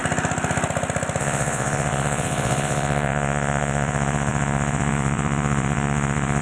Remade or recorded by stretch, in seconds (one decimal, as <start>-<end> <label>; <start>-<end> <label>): 0.0-1.2 recorded; 1.2-6.4 remade